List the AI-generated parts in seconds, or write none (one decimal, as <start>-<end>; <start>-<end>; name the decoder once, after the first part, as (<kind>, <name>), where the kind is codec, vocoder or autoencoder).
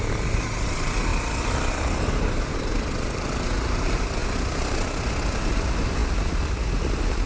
0.0-4.2 (vocoder, BigVGAN v2); 5.5-7.3